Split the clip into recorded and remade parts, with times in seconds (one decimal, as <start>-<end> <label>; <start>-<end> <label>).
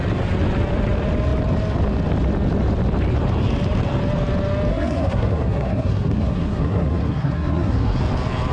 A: 0.0-4.7 recorded; 4.7-8.0 remade; 8.0-8.5 recorded